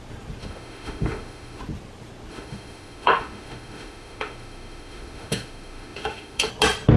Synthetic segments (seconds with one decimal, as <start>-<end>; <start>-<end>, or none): 0.4-1.6; 2.3-6.5